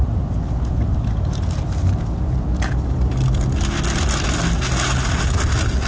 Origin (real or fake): real